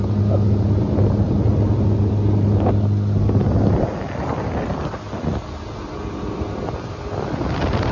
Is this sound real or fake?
real